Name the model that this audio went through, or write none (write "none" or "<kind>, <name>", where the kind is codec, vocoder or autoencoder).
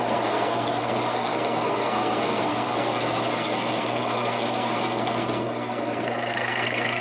codec, SNAC